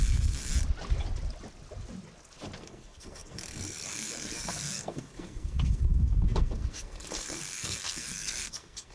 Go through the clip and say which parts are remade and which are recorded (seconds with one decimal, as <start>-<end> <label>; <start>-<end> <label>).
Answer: 0.0-0.5 remade; 0.5-2.6 recorded; 2.6-8.9 remade